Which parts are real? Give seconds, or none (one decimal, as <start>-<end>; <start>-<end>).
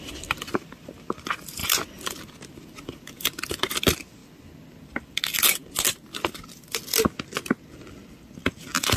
0.0-9.0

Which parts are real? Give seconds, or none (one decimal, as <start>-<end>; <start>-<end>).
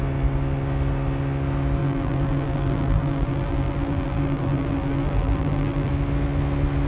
0.0-1.8; 5.9-6.9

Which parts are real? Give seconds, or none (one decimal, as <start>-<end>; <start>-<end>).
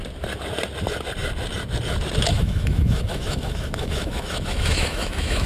0.0-2.3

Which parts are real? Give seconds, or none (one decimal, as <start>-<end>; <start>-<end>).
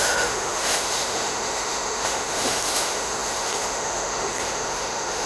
none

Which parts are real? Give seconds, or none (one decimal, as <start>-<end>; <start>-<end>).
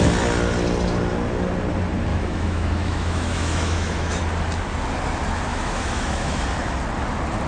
0.0-2.1; 4.2-5.5; 6.4-7.5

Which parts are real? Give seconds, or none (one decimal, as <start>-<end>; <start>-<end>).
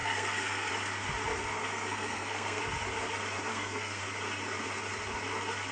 0.7-1.4; 2.6-3.5; 4.0-5.7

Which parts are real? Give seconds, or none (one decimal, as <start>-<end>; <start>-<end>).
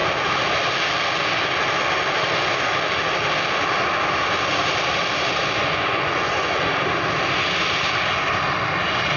0.0-5.6; 6.7-9.2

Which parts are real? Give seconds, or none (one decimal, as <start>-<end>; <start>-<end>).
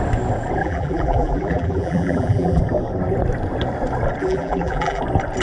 0.0-0.6; 2.6-4.2; 5.0-5.4